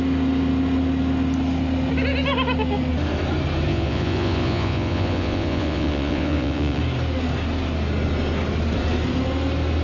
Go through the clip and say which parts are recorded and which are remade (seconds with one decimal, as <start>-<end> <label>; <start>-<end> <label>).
0.0-3.7 recorded; 3.7-6.8 remade; 6.8-9.8 recorded